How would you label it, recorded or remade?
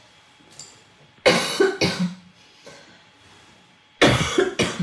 recorded